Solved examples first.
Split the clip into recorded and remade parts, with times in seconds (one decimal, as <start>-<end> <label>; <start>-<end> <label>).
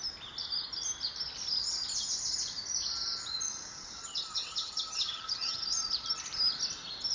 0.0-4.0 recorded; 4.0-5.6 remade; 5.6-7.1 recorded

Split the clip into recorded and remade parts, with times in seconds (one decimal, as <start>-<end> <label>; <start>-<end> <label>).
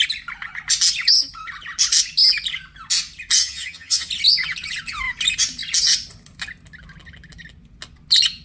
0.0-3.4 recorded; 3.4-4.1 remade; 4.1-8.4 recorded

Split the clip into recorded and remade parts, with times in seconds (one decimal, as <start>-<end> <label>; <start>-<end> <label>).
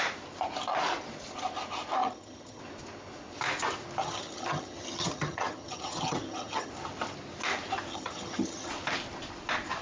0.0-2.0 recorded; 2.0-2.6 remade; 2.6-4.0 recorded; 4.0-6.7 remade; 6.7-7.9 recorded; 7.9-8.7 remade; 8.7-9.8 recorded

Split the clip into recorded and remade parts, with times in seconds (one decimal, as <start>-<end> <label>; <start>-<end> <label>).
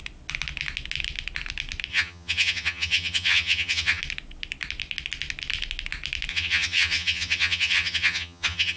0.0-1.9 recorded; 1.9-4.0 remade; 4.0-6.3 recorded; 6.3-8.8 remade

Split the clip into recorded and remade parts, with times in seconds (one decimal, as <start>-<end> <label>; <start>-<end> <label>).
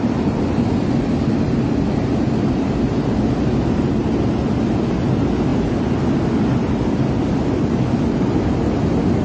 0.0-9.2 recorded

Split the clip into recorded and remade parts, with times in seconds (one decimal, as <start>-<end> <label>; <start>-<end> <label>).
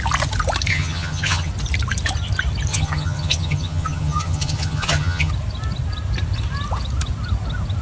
0.0-0.7 recorded; 0.7-1.5 remade; 1.5-2.7 recorded; 2.7-5.3 remade; 5.3-7.8 recorded